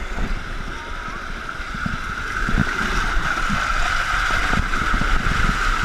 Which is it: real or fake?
real